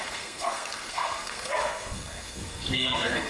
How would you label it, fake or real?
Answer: fake